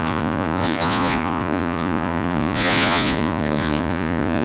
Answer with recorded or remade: remade